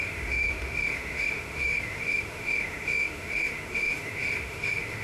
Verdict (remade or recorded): remade